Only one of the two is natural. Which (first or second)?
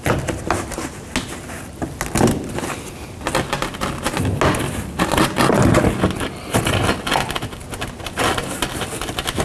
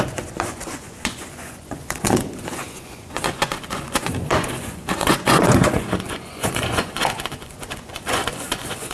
first